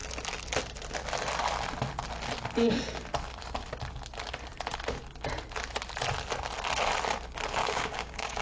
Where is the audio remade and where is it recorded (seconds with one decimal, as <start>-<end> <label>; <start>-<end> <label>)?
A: 0.0-7.6 recorded; 7.6-8.4 remade